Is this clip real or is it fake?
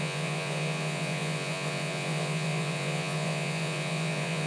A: fake